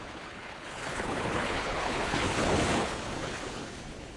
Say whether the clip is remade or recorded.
remade